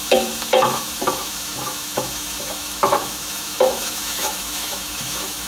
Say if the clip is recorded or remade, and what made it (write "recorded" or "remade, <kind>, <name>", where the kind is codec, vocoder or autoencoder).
remade, autoencoder, DAC-VAE